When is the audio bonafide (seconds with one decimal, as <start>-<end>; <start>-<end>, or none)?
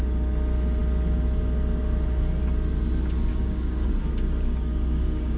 0.0-3.3